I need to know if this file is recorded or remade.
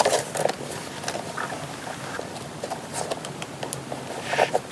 recorded